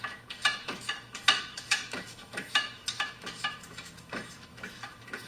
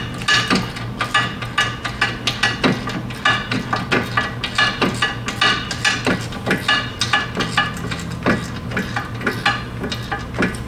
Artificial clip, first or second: first